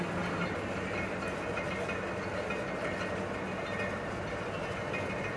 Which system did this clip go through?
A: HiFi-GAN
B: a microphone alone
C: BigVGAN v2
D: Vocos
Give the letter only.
B